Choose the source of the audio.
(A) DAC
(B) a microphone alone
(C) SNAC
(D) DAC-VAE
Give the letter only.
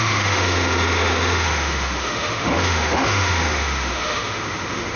D